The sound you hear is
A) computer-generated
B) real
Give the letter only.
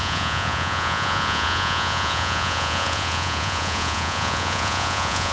A